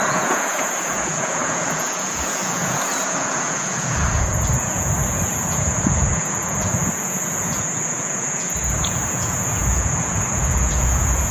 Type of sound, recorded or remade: remade